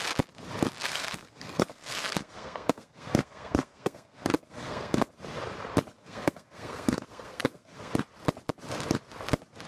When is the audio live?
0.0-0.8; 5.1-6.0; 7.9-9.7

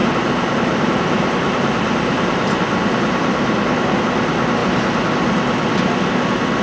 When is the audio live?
4.0-6.6

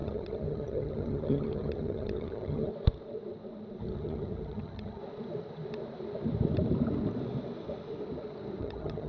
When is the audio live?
2.7-3.8; 5.0-8.6

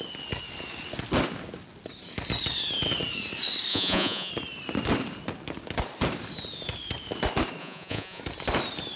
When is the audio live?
0.0-3.7; 4.3-7.6; 8.2-9.0

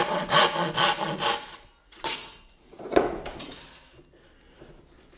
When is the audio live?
0.0-1.8; 3.6-5.2